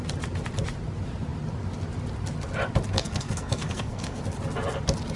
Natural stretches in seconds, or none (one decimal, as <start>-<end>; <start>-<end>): 0.0-3.0; 4.2-5.2